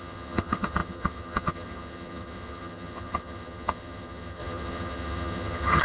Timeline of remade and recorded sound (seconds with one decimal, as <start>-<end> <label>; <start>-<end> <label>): 0.0-5.8 remade